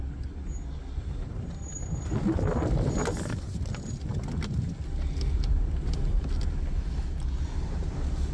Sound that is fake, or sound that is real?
real